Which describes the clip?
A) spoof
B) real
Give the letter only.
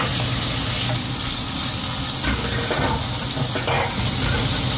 B